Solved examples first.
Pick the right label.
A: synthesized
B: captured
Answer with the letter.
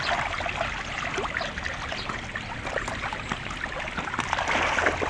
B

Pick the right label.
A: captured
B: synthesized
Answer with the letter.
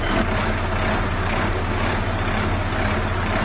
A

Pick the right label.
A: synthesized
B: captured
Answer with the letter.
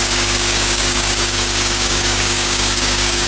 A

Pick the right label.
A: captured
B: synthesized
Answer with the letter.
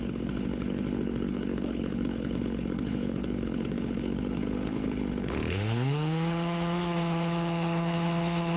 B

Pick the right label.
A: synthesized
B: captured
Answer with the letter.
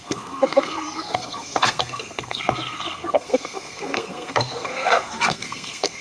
A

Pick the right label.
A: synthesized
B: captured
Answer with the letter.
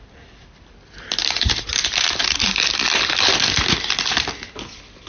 B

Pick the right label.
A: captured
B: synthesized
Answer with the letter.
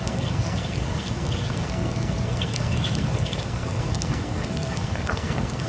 B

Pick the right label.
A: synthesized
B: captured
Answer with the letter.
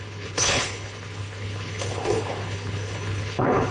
A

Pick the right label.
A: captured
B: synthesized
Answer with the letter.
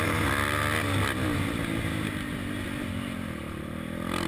A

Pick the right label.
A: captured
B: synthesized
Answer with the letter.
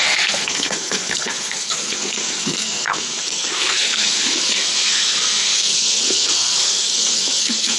B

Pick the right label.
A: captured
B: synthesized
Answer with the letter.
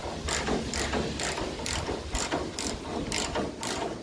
A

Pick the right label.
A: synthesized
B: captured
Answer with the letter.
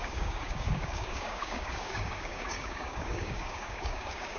A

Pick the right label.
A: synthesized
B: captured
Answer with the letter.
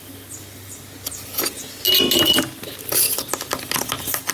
B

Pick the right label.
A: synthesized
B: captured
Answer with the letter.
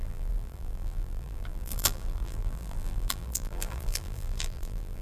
A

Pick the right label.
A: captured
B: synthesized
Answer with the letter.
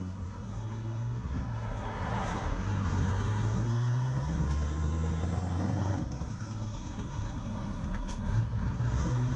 B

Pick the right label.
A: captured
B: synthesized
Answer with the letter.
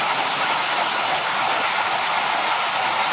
A